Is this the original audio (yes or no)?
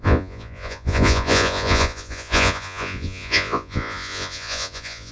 no